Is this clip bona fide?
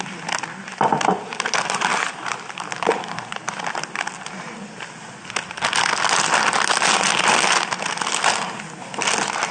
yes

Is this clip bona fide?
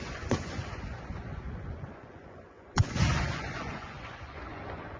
no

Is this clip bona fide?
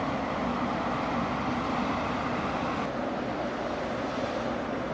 yes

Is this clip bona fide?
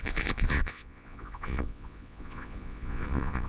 no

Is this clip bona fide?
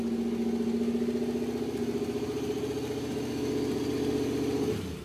yes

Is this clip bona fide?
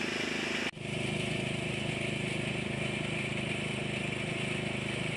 yes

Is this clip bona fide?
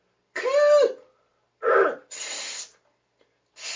yes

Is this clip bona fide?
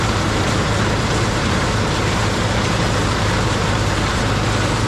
no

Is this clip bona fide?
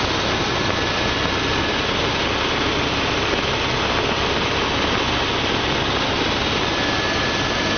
yes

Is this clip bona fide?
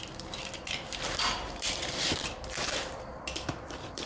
no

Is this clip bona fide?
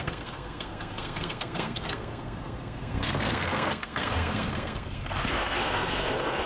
no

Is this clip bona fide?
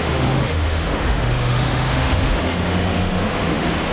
no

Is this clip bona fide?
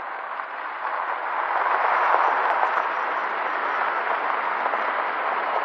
yes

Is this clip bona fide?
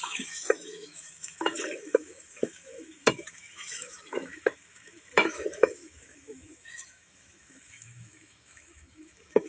no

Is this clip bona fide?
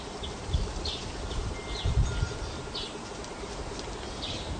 yes